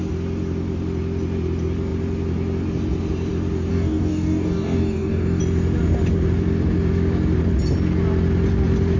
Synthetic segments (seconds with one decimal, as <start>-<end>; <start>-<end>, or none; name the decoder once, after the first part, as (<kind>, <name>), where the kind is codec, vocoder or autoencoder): 3.7-5.4 (codec, DAC)